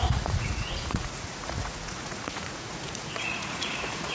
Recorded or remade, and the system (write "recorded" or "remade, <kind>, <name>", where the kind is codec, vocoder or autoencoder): remade, vocoder, Vocos